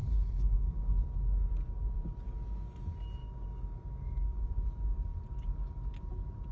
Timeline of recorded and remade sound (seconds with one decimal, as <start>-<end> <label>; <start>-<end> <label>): 0.0-1.0 remade; 1.0-3.2 recorded; 3.2-4.5 remade; 4.5-6.5 recorded